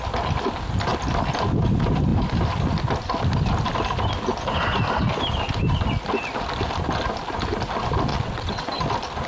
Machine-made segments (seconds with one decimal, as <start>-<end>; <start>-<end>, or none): 8.1-8.8